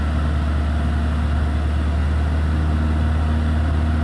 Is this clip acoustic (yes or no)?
yes